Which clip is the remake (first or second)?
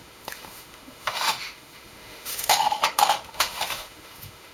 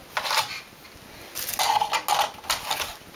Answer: first